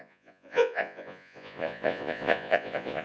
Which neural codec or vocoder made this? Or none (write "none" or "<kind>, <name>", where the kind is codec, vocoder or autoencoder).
vocoder, Vocos